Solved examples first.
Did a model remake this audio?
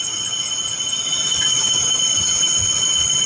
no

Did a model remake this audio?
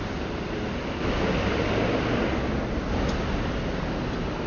no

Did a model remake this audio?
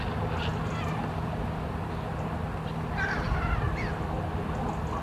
no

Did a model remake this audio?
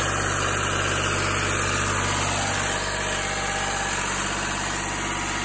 no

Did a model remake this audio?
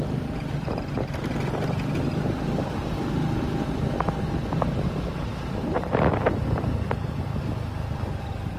no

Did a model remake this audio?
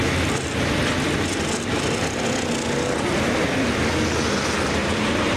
no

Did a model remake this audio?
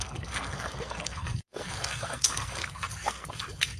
yes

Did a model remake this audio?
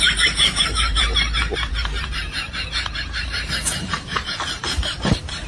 yes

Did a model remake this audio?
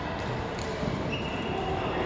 no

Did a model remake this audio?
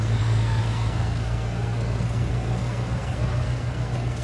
yes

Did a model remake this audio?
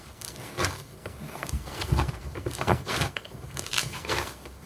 yes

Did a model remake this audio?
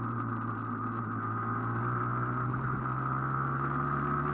no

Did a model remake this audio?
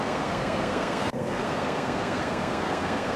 yes